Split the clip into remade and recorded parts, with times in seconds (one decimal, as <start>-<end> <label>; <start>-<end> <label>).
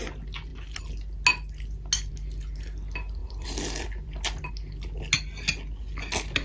0.0-3.2 recorded; 3.2-4.5 remade; 4.5-6.4 recorded